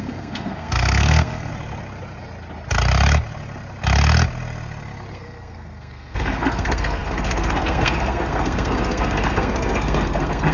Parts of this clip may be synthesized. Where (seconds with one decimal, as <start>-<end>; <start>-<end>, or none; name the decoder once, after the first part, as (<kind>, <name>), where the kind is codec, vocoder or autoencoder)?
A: 0.0-1.5 (codec, SNAC); 5.1-10.5